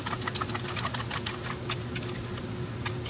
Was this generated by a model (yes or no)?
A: no